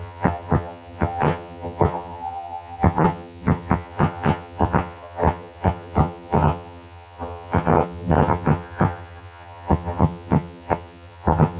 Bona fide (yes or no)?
no